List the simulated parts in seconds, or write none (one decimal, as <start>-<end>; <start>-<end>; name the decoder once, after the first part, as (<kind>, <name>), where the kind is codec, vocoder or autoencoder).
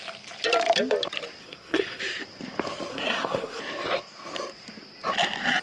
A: 1.4-2.0 (codec, SNAC); 2.9-3.6